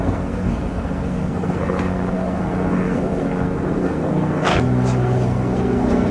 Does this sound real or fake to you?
fake